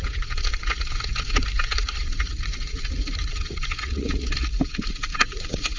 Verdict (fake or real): fake